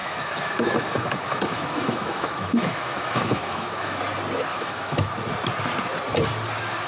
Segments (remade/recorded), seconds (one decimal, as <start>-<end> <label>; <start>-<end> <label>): 0.0-4.0 remade; 4.0-4.5 recorded; 4.5-5.1 remade; 5.1-6.9 recorded